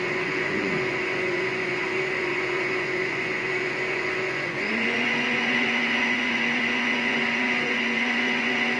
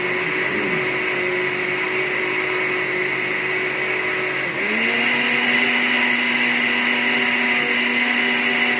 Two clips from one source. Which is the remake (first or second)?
first